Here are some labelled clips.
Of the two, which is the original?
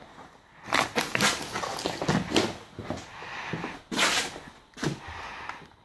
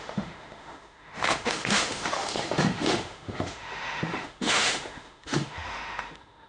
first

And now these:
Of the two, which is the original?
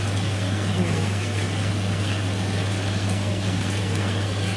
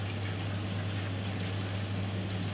second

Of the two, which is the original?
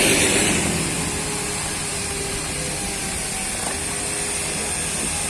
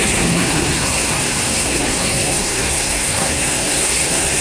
first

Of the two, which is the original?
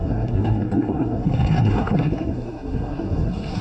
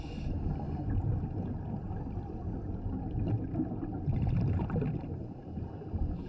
second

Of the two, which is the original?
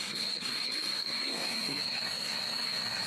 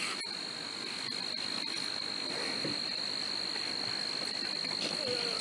second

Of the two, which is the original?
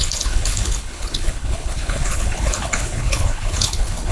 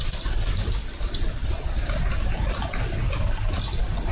second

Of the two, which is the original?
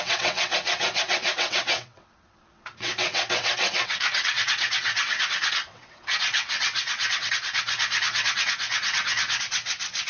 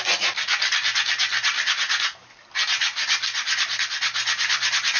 second